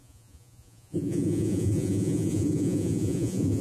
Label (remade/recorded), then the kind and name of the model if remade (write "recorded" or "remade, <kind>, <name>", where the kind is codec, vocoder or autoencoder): remade, vocoder, Vocos